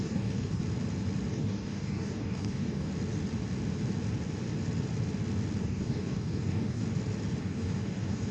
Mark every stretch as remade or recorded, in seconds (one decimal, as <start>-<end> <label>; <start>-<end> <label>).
0.0-0.6 remade; 0.6-1.3 recorded; 1.3-2.9 remade; 2.9-5.6 recorded; 5.6-6.8 remade; 6.8-7.4 recorded; 7.4-8.3 remade